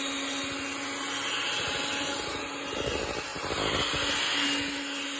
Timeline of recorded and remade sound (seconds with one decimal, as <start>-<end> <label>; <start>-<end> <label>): 0.0-5.2 recorded